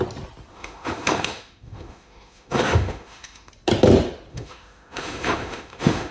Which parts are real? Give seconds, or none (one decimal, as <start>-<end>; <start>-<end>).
0.0-0.5; 3.5-4.3